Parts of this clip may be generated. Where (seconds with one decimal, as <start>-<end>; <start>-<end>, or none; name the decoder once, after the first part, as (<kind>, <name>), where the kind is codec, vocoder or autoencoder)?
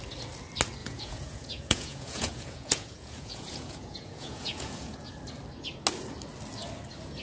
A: 0.8-5.1 (vocoder, Vocos)